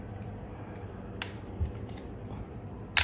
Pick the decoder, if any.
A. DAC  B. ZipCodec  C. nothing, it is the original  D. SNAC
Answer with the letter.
C